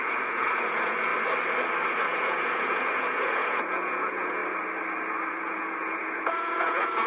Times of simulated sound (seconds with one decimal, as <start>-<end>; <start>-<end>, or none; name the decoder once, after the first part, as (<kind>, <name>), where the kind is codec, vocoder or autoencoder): 0.0-1.1 (vocoder, Vocos); 1.9-4.4; 5.3-7.1